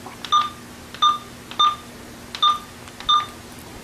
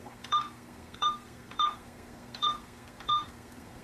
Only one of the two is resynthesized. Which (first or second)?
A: second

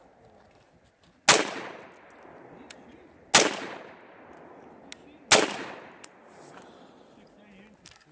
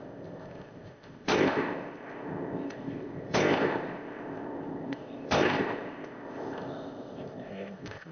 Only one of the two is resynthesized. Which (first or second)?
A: second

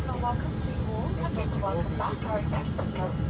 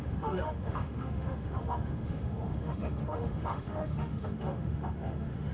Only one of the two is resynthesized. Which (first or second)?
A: second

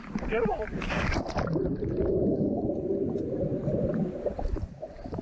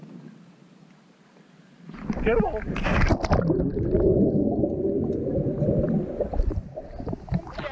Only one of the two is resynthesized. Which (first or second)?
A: first